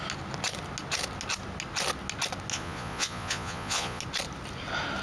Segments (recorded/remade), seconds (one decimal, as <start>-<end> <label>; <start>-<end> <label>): 0.0-2.5 recorded; 2.5-4.0 remade; 4.0-5.0 recorded